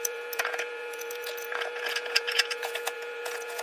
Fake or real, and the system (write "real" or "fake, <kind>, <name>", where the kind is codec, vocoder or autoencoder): fake, vocoder, Vocos